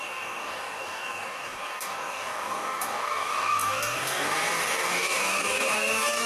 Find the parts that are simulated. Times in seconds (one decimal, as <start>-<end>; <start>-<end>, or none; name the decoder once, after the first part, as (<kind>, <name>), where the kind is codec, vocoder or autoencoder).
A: 0.0-6.3 (codec, DAC)

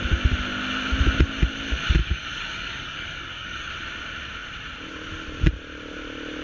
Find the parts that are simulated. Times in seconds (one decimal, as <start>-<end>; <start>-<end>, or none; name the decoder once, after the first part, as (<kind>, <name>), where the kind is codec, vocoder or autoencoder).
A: 2.0-3.7 (codec, DAC)

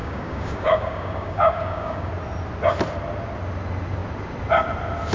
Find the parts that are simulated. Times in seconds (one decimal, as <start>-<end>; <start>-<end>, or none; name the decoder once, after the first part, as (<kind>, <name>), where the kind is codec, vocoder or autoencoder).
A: 0.0-2.1 (codec, DAC)

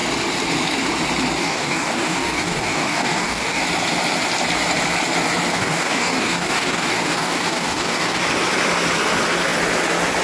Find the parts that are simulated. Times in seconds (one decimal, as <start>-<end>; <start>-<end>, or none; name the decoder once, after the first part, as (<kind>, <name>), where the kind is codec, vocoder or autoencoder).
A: 1.4-3.6 (codec, DAC); 5.5-8.2

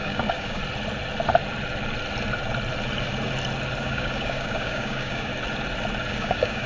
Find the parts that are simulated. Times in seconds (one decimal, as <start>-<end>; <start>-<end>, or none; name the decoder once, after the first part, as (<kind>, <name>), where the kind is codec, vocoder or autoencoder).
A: 0.0-0.6 (codec, DAC); 3.8-5.3; 6.1-6.7

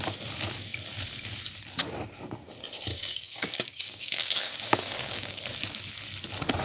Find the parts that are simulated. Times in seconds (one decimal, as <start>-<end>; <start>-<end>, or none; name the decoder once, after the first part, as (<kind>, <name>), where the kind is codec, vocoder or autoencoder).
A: 2.9-5.4 (codec, DAC)

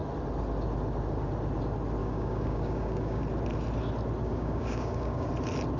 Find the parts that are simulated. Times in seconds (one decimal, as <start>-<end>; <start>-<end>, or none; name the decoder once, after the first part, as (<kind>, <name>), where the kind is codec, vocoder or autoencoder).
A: 2.0-3.2 (codec, DAC); 4.2-5.3